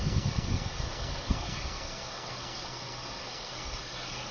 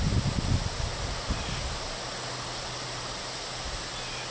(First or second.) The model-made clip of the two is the first